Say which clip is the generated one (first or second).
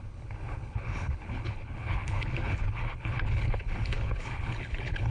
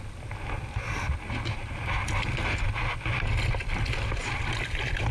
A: first